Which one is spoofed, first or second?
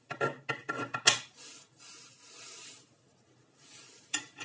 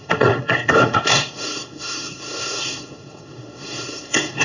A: second